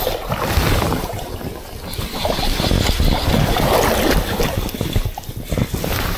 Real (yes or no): yes